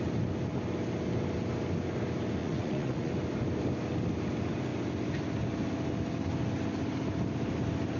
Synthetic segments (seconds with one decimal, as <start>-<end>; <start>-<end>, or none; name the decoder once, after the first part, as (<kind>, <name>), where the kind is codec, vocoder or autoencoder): 2.4-3.1 (vocoder, Vocos)